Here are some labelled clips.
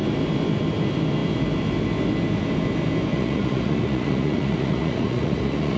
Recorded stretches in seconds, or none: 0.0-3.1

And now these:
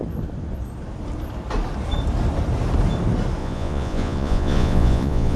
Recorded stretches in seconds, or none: 0.0-3.4

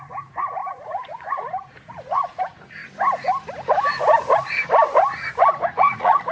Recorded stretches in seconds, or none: 2.8-5.8

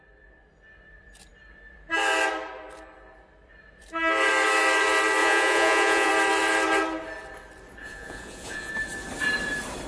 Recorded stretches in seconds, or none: 0.0-5.2; 6.1-7.8; 8.7-9.9